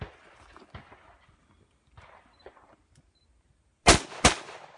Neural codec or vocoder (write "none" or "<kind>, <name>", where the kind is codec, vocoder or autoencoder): none